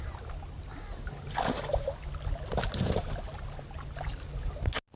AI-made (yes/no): no